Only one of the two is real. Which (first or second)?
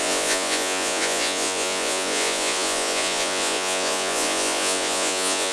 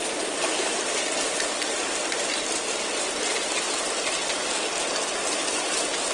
second